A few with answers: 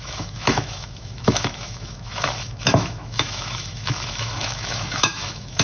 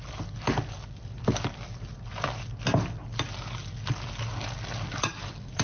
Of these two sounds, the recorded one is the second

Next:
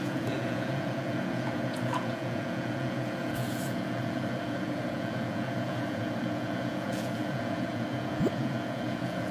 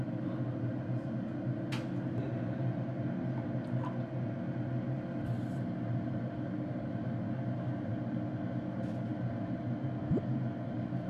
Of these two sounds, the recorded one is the second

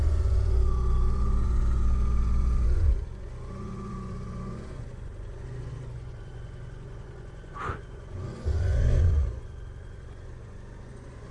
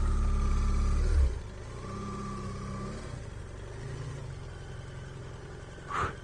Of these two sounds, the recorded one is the second